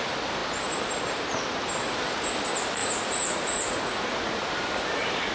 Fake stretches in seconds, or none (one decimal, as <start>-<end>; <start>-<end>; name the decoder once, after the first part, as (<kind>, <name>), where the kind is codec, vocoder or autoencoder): 2.8-4.5 (vocoder, Vocos)